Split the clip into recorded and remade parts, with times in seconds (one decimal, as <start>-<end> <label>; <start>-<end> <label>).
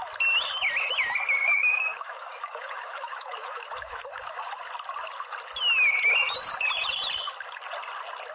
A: 0.0-1.4 recorded; 1.4-4.4 remade; 4.4-8.3 recorded